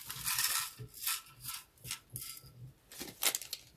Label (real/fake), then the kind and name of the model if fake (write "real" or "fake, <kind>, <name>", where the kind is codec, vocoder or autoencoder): real